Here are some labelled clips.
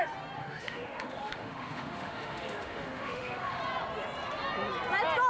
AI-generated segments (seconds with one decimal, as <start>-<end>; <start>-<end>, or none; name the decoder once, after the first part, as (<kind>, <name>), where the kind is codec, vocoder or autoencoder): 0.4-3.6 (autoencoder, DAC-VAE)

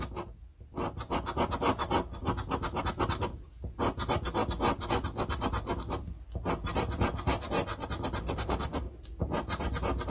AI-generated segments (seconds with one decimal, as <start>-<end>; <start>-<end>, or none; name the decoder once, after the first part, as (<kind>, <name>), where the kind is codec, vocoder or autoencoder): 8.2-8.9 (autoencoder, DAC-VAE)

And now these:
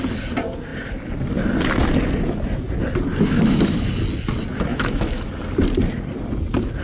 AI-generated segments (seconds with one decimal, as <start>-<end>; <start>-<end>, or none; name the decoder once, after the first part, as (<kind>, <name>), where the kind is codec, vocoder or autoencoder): 3.1-3.9 (autoencoder, DAC-VAE); 4.7-5.3